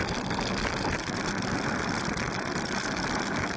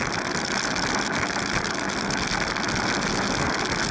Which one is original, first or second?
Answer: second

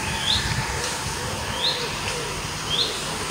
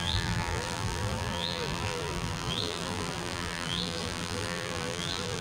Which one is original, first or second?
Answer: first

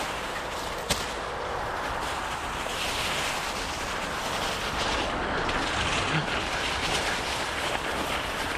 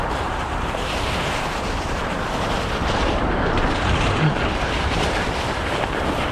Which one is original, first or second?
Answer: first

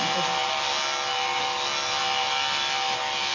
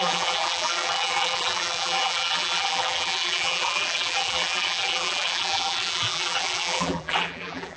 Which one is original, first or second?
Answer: first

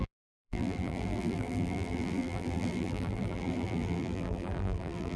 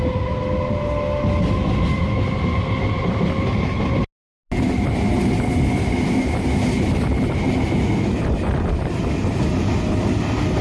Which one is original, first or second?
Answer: second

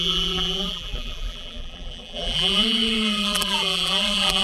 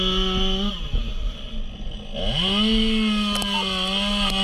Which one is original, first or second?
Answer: second